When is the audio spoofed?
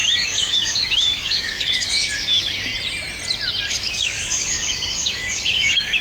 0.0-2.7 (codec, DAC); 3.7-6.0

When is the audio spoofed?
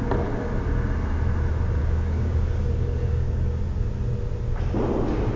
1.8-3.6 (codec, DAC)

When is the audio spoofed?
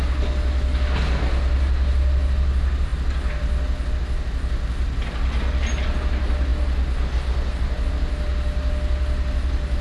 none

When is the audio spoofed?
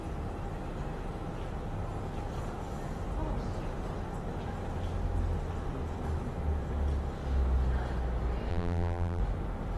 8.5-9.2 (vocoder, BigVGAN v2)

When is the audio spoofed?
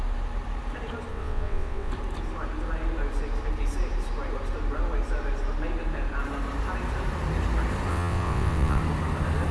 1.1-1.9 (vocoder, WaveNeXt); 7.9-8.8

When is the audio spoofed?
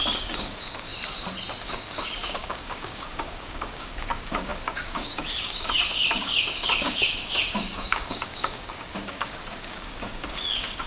0.0-0.9 (codec, DAC); 1.6-10.9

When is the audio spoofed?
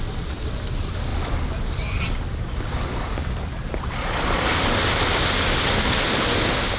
none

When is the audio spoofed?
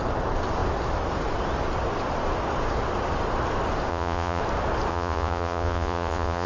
3.9-4.4 (vocoder, Vocos); 4.9-6.5